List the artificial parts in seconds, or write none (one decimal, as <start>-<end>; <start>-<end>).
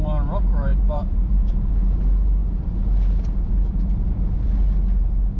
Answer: 0.7-1.7